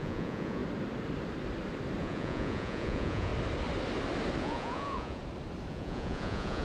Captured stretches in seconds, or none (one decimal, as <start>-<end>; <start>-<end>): 0.6-2.0; 3.3-4.4; 5.2-5.7